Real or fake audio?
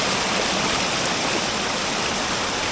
real